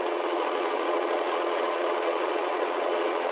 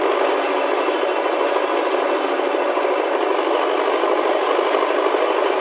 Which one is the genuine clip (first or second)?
second